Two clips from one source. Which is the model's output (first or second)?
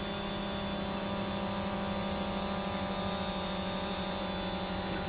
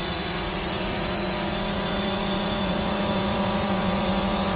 second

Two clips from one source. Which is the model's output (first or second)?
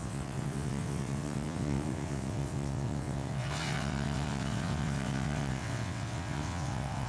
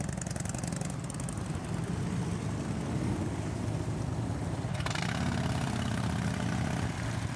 first